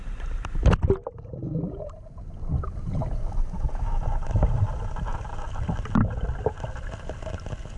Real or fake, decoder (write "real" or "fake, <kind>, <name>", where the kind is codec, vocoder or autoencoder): real